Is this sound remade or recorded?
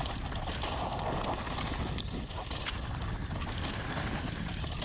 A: recorded